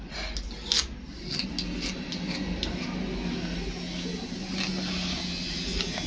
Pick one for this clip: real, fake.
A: real